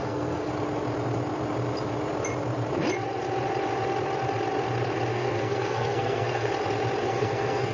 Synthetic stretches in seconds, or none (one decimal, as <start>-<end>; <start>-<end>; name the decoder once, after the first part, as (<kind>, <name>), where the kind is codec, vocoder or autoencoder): 0.0-0.5 (codec, SNAC); 5.1-6.5; 7.0-7.7